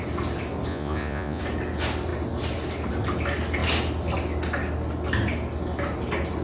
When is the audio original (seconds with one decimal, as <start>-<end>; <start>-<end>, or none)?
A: 0.0-0.7; 1.4-6.4